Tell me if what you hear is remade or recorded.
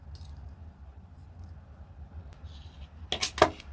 recorded